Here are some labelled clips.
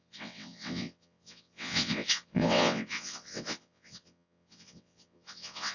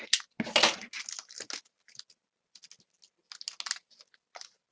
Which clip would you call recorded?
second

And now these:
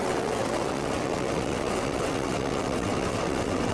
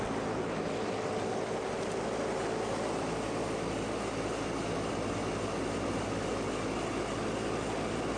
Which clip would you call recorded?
second